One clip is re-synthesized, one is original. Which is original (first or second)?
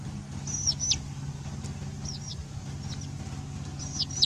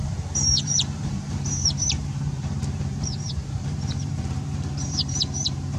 first